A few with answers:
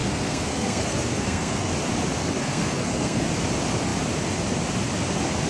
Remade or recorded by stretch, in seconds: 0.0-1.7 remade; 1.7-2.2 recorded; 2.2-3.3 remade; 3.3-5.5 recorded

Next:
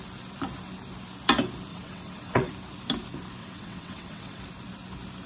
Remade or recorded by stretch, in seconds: 0.0-1.7 recorded; 1.7-2.5 remade; 2.5-3.4 recorded; 3.4-4.4 remade; 4.4-5.3 recorded